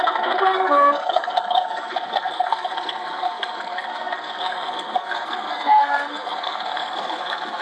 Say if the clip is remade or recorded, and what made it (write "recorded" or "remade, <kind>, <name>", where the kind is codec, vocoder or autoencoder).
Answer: remade, codec, SNAC